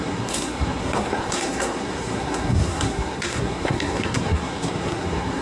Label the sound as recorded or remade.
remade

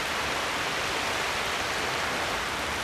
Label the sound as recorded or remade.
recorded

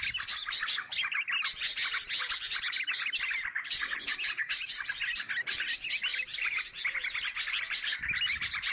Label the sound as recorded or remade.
recorded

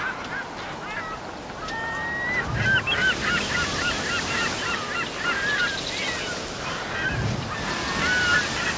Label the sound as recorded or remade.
recorded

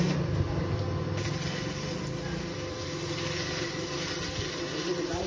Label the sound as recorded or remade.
recorded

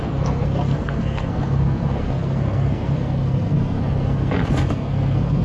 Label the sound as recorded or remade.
remade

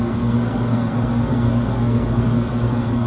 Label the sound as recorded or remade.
remade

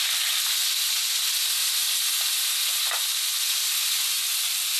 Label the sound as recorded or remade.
recorded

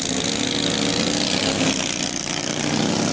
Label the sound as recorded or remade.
recorded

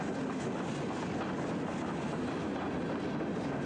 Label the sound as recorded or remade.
recorded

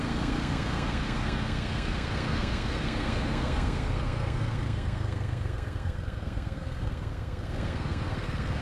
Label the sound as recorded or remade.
remade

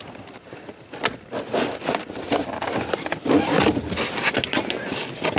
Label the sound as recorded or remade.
recorded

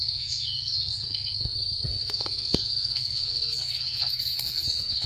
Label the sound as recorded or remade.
remade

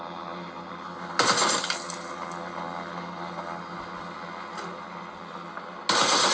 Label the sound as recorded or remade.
recorded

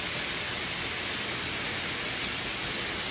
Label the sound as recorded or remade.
recorded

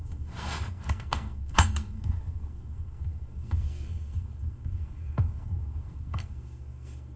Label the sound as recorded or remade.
remade